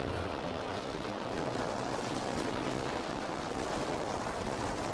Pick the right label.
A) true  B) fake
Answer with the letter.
B